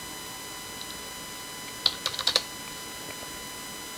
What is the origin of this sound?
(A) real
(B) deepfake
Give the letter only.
A